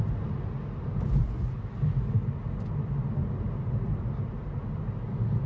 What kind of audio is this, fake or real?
real